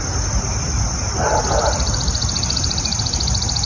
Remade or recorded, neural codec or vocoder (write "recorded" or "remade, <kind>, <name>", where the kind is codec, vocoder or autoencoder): recorded